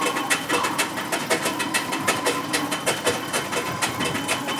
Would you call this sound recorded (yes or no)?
yes